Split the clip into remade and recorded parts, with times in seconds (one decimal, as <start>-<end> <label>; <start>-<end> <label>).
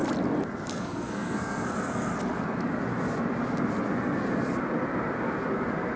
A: 0.0-0.7 recorded; 0.7-2.1 remade; 2.1-6.0 recorded